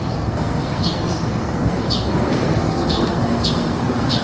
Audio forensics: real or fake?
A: fake